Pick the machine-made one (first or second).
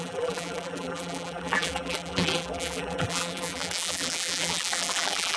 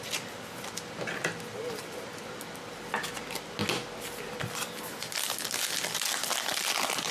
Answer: first